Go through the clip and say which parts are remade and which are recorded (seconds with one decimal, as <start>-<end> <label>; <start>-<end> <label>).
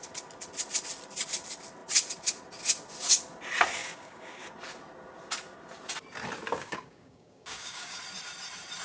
0.0-3.8 recorded; 3.8-4.5 remade; 4.5-6.5 recorded; 6.5-8.0 remade; 8.0-8.8 recorded